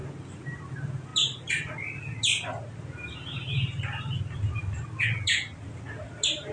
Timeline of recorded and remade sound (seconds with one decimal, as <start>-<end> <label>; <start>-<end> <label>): 0.0-6.5 recorded